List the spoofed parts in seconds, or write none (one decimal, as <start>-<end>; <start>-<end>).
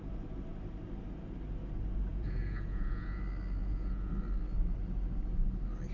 2.1-3.2; 3.6-4.1